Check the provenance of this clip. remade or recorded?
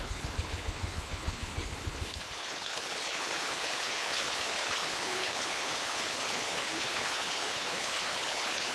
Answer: remade